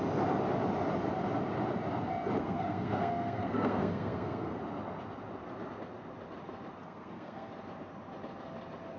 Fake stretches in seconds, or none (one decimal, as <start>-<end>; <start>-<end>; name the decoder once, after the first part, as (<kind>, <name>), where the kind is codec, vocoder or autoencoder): 2.4-4.6 (codec, SNAC); 6.8-7.5